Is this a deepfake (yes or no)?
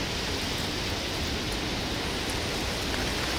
no